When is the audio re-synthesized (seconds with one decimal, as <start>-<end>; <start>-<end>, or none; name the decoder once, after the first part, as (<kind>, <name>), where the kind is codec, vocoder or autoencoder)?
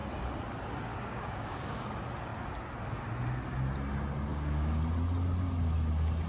0.9-1.9 (codec, DAC); 4.3-4.8